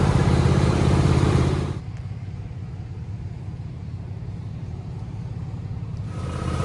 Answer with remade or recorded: remade